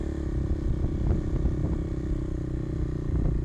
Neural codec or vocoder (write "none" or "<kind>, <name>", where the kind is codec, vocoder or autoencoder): none